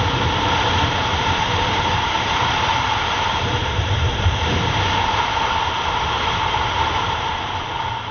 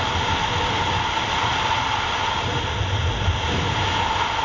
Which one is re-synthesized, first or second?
first